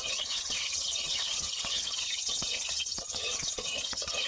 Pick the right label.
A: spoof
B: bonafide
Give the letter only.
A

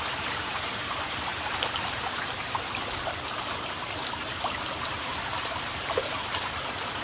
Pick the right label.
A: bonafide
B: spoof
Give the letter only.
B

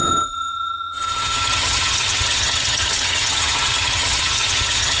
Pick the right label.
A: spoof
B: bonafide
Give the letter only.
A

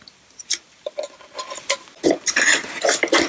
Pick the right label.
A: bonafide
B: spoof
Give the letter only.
A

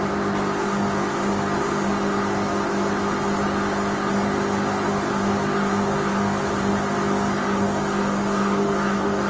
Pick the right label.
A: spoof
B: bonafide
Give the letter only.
B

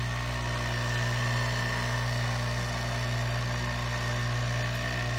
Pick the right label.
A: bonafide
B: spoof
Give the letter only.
A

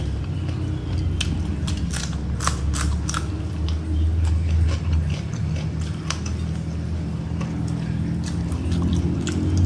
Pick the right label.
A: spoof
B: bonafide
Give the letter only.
B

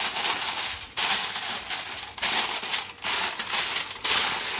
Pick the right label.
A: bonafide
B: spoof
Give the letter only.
A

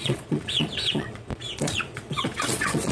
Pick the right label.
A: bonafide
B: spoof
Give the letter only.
B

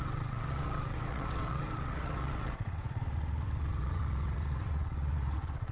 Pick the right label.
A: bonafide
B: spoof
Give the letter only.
B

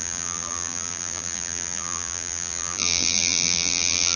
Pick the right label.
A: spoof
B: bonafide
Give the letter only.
A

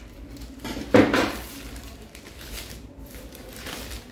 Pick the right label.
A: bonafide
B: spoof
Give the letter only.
B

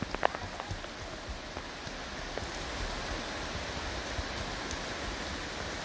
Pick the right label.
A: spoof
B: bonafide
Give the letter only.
B